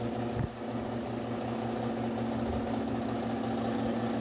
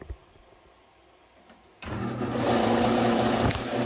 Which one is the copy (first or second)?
second